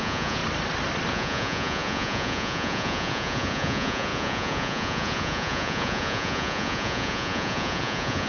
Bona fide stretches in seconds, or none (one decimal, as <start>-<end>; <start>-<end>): 0.4-1.1